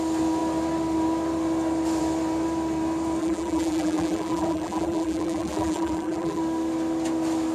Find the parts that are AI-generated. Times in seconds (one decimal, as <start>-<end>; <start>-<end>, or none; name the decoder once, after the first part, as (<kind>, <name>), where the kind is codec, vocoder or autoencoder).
3.2-6.4 (vocoder, BigVGAN v2)